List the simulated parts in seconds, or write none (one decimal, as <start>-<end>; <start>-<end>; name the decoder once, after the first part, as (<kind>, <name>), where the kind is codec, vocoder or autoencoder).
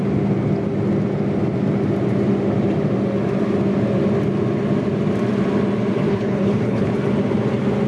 6.1-6.9 (codec, HILCodec)